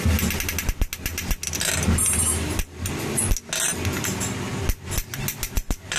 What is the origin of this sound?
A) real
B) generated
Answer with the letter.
A